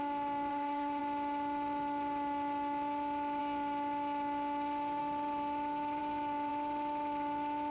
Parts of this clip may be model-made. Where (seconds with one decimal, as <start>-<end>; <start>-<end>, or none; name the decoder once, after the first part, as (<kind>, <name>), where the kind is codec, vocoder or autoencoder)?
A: 0.5-1.0 (autoencoder, DAC-VAE)